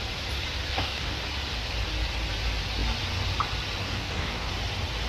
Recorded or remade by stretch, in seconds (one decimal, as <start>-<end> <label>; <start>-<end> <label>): 0.0-0.7 recorded; 0.7-1.2 remade; 1.2-3.8 recorded; 3.8-4.5 remade; 4.5-5.1 recorded